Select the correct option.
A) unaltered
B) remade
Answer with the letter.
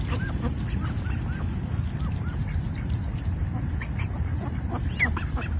A